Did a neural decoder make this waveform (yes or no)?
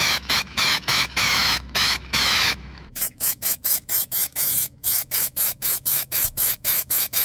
yes